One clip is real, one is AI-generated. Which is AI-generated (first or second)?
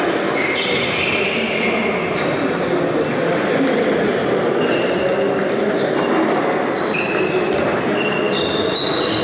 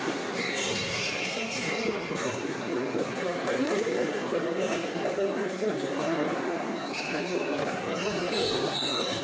second